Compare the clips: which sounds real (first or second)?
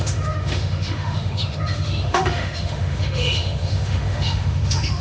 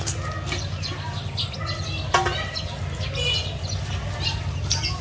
second